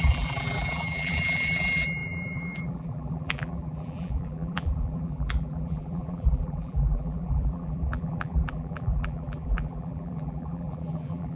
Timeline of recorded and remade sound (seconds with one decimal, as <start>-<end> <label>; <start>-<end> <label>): 0.0-11.4 remade